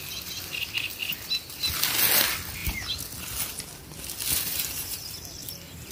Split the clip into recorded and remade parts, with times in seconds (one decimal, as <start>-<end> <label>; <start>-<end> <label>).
0.0-4.5 recorded; 4.5-5.0 remade; 5.0-5.9 recorded